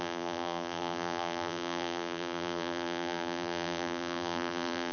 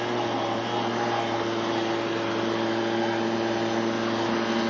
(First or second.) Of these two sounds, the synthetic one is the first